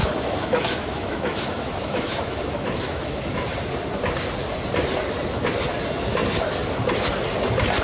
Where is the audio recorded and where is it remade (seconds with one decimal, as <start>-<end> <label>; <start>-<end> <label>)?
0.0-3.4 remade; 3.4-7.8 recorded